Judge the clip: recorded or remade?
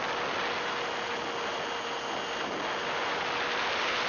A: recorded